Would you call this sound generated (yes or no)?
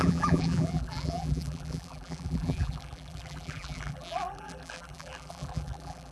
yes